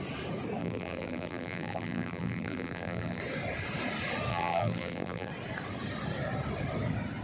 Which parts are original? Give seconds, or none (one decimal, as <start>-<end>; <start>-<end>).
0.0-0.6; 3.2-4.3; 5.3-7.2